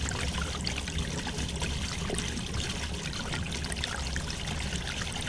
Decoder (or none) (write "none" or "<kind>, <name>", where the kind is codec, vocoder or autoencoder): none